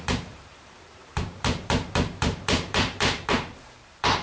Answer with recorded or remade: remade